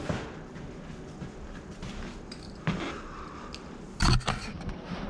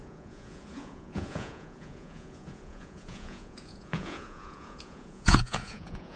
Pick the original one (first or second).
first